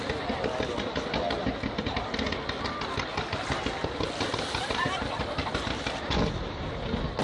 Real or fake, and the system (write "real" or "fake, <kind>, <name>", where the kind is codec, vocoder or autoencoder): real